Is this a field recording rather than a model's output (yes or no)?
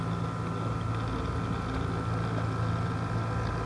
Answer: yes